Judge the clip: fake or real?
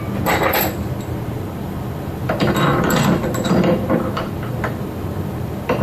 fake